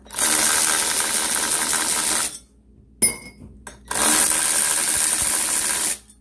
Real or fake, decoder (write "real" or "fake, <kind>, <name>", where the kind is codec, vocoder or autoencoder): real